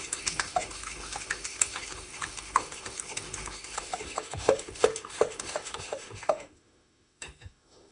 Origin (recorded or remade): remade